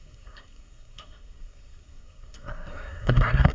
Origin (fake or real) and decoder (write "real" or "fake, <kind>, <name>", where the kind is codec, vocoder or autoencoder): fake, codec, SNAC